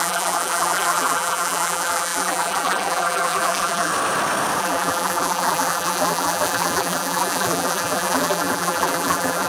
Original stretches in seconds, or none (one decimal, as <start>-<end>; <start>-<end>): 3.9-4.6